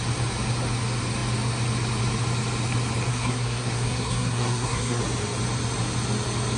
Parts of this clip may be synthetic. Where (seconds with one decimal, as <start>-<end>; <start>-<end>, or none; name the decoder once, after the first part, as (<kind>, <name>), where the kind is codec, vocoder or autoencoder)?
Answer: 3.1-5.0 (codec, SNAC)